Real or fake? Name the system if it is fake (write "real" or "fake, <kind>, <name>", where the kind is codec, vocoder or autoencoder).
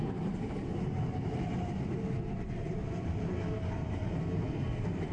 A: real